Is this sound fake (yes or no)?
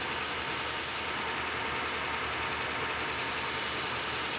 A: no